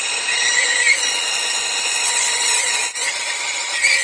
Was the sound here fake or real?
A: fake